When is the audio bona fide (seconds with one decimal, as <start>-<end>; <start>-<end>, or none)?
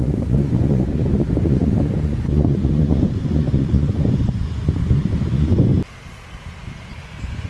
5.7-6.6